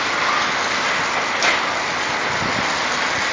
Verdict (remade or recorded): recorded